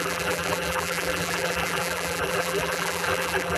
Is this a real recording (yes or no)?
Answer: no